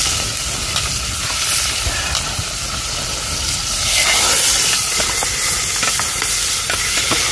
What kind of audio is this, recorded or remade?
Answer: recorded